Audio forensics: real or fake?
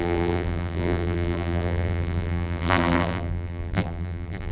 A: fake